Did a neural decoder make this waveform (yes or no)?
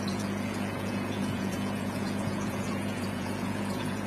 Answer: yes